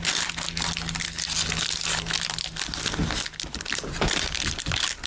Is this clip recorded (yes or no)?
yes